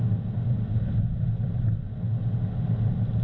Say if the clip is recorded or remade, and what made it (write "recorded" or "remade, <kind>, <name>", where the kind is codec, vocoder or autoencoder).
recorded